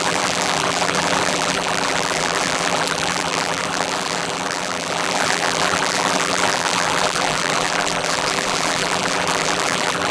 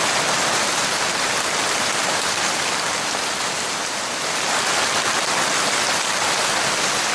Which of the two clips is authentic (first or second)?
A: second